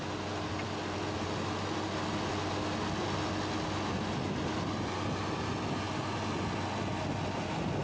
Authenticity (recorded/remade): recorded